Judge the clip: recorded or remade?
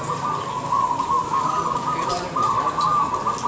recorded